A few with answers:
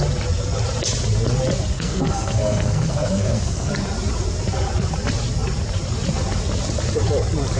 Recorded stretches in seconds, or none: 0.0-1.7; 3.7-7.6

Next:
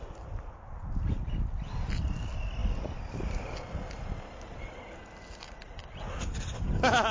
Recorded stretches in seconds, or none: 0.0-7.1

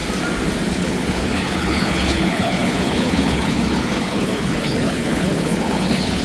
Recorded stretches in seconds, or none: 0.0-0.7

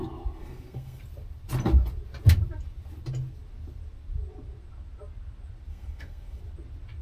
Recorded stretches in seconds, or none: 0.0-0.4; 1.0-5.7; 6.4-7.0

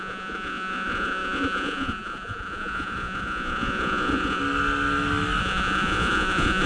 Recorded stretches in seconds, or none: 4.4-5.4